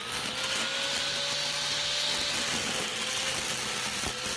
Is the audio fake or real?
real